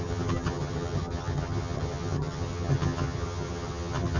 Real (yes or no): no